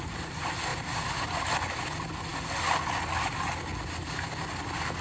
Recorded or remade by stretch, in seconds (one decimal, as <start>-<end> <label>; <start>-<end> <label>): 0.0-5.0 recorded

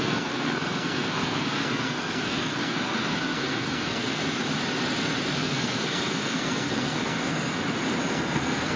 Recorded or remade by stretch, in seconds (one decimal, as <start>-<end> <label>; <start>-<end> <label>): 0.0-4.2 remade; 4.2-5.4 recorded; 5.4-7.5 remade; 7.5-8.1 recorded; 8.1-8.8 remade